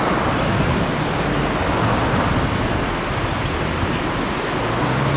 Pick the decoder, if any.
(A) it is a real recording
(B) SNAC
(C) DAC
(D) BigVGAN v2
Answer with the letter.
A